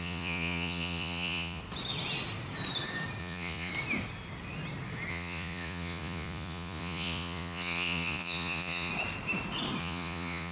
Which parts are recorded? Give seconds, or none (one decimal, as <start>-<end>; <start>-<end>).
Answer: 1.6-3.2; 3.7-5.1; 8.9-9.8